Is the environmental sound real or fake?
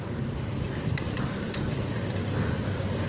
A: real